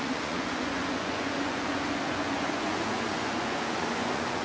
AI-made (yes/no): yes